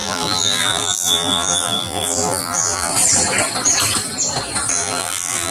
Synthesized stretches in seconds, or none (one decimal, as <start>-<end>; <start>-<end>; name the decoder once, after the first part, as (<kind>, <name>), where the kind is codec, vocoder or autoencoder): 0.0-2.9 (vocoder, BigVGAN v2); 4.7-5.5